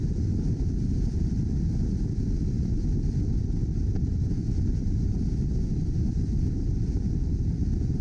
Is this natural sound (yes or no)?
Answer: yes